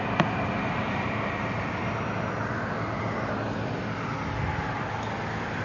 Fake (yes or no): no